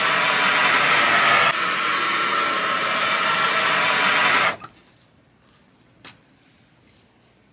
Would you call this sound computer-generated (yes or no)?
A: no